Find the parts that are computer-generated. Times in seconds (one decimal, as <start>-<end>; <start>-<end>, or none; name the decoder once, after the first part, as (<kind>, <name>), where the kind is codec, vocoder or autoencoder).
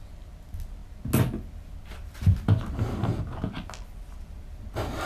none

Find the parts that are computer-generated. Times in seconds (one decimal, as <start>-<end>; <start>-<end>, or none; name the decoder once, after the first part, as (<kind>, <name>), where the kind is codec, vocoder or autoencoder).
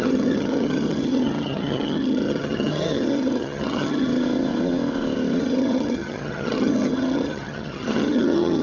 0.0-4.1 (vocoder, HiFi-GAN); 5.4-8.6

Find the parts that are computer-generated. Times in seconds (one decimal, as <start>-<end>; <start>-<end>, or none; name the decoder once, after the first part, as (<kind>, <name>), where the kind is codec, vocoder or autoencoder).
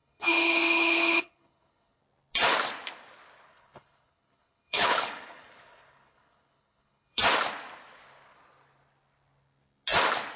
0.0-2.0 (codec, HILCodec); 3.5-7.2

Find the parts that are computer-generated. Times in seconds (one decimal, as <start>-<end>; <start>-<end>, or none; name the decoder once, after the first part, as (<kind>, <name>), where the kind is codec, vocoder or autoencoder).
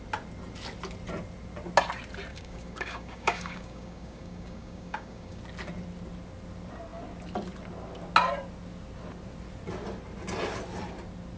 2.3-5.4 (codec, DAC)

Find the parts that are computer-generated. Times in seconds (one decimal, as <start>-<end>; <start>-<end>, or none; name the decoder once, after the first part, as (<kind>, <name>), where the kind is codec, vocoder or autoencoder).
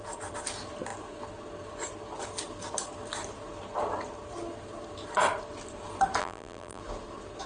6.2-6.8 (vocoder, BigVGAN v2)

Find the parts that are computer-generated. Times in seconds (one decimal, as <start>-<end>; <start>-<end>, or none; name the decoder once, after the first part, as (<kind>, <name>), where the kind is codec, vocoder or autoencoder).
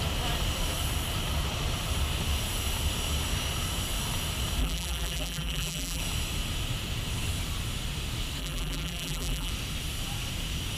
4.6-6.0 (vocoder, BigVGAN v2); 8.4-9.5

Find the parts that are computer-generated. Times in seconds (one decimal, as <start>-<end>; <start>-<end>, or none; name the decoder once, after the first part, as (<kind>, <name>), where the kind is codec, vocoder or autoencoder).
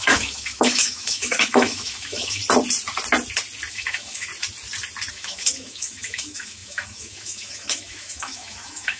0.0-2.4 (autoencoder, DAC-VAE); 3.7-4.3; 5.1-9.0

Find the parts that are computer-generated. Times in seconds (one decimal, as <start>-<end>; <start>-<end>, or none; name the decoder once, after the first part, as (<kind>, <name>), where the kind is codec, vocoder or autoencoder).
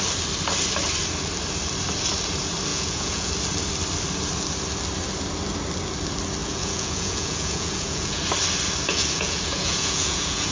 2.7-3.3 (vocoder, Vocos); 6.4-8.2; 8.9-10.5